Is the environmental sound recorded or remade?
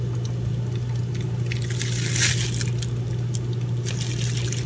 recorded